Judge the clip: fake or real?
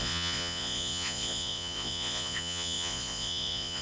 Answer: fake